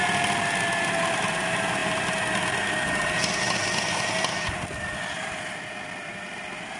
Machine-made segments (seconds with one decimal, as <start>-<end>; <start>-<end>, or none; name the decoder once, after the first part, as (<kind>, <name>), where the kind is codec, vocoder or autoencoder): none